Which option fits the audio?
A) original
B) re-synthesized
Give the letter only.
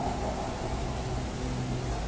A